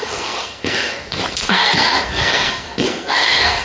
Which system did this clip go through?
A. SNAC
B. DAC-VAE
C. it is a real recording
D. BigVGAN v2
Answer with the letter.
A